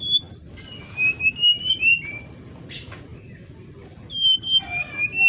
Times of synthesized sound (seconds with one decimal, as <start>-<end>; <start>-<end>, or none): 1.9-4.6